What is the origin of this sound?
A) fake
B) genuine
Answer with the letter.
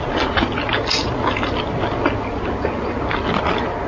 B